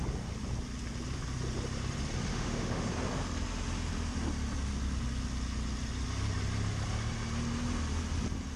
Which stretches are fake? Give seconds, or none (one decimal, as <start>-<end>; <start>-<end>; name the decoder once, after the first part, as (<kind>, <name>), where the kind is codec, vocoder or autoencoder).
2.3-2.9 (autoencoder, DAC-VAE)